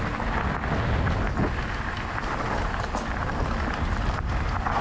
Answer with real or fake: real